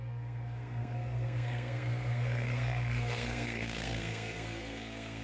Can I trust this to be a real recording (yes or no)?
no